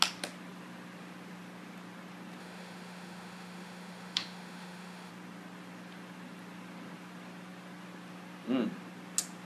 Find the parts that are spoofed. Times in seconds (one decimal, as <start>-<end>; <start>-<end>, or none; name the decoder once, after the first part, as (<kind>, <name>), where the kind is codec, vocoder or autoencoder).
2.4-5.1 (autoencoder, DAC-VAE)